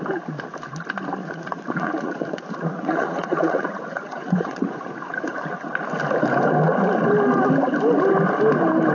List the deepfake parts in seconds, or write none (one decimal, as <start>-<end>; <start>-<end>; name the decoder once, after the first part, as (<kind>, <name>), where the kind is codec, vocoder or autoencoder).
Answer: 1.2-5.4 (vocoder, Vocos)